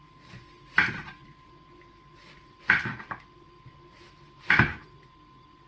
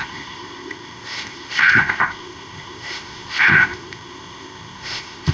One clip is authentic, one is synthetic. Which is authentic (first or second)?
first